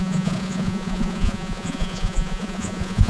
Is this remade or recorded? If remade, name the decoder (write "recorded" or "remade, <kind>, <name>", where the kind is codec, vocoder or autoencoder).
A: remade, vocoder, Vocos